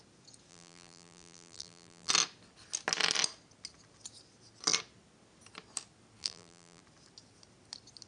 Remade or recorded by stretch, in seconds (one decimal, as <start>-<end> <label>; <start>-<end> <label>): 0.0-0.5 recorded; 0.5-2.1 remade; 2.1-6.2 recorded; 6.2-6.8 remade; 6.8-8.1 recorded